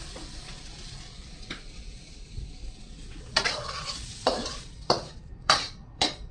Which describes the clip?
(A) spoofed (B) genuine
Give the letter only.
A